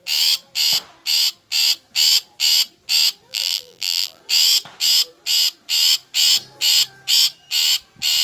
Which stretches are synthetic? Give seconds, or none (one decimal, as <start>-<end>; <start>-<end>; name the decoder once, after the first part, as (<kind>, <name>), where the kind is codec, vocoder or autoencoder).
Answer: 3.3-4.2 (vocoder, BigVGAN v2)

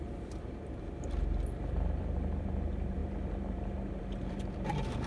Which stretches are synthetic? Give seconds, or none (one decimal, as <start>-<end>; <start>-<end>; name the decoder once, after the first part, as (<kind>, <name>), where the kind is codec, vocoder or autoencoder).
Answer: 0.0-5.1 (vocoder, BigVGAN v2)

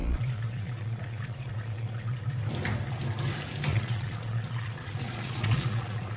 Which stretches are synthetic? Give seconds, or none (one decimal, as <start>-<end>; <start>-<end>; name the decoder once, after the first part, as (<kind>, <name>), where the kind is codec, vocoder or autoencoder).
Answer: 0.0-2.2 (vocoder, Vocos); 3.7-6.2

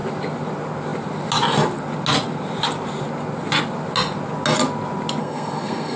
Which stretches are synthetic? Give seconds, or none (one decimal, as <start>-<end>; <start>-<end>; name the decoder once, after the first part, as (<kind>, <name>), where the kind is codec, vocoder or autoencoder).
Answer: 5.2-6.0 (codec, SNAC)

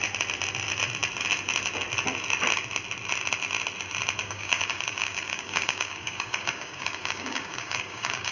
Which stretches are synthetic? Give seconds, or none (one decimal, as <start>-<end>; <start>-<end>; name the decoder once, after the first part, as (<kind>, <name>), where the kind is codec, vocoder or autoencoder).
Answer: 4.2-8.3 (codec, DAC)